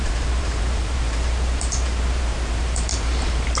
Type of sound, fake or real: fake